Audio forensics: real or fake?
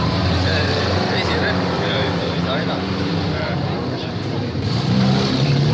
fake